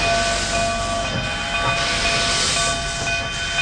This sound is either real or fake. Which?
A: real